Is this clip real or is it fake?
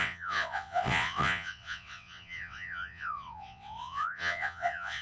fake